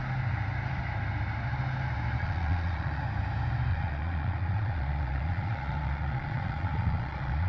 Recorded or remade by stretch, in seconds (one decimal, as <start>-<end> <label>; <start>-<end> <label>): 0.0-2.2 recorded; 2.2-3.0 remade; 3.0-3.7 recorded; 3.7-7.5 remade